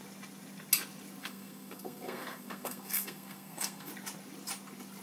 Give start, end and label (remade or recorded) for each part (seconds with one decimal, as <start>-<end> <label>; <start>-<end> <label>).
0.0-1.2 recorded; 1.2-3.9 remade; 3.9-5.0 recorded